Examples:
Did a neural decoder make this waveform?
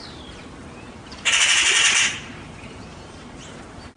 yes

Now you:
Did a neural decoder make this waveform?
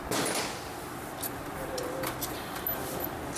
no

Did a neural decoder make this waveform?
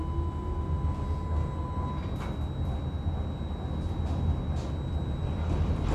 no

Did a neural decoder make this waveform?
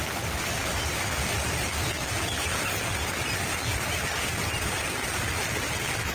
no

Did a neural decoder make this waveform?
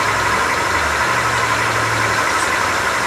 no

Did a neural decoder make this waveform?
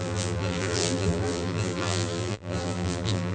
yes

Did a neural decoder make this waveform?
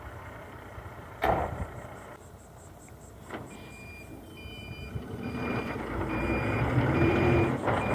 yes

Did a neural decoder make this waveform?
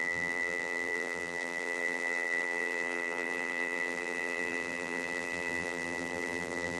yes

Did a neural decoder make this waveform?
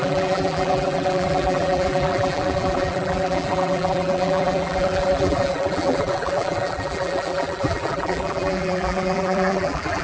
yes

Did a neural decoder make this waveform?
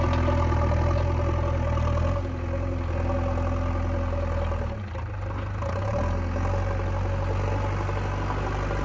no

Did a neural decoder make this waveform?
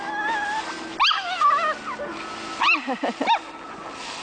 no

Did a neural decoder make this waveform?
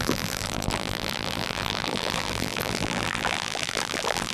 yes